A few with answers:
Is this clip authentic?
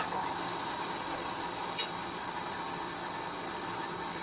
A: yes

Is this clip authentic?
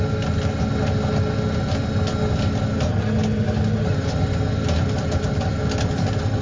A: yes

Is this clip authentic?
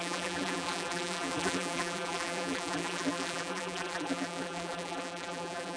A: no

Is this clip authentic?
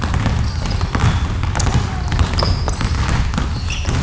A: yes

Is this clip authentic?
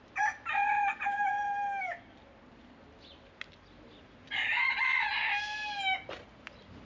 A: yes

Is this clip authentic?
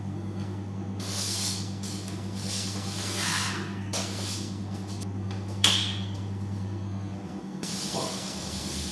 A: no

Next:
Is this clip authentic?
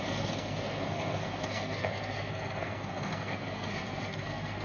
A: no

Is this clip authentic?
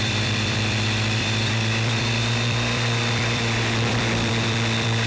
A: no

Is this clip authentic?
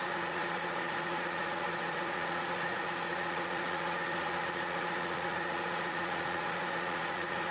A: no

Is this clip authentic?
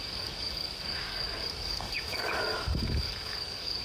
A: no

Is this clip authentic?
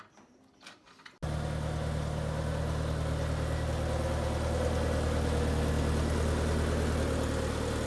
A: yes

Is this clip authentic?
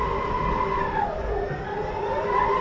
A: yes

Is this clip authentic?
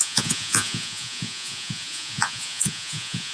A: no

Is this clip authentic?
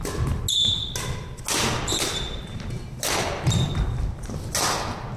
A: yes